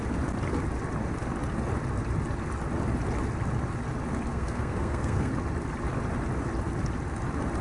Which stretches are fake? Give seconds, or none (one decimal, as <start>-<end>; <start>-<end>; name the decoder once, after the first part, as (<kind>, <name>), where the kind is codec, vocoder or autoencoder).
4.3-5.3 (codec, SNAC)